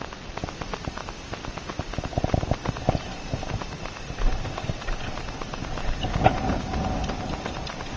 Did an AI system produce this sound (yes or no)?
no